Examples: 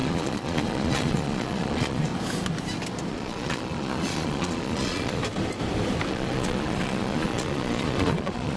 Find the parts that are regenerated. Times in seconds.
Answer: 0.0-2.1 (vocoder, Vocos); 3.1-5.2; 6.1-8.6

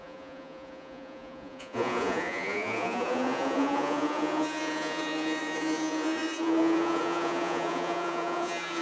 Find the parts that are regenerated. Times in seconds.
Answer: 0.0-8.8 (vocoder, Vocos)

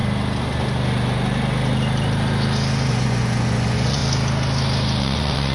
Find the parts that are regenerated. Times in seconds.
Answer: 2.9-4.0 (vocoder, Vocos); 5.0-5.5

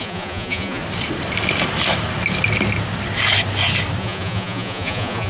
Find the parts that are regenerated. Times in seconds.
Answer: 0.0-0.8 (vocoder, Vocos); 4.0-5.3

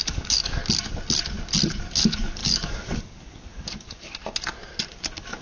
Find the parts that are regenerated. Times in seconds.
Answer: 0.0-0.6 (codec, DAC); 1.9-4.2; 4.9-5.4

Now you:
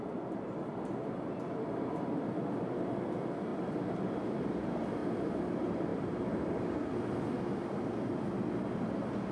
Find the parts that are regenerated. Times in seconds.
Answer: 3.5-4.2 (vocoder, BigVGAN v2); 5.0-5.5